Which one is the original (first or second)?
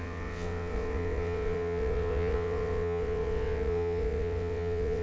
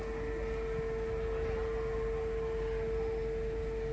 second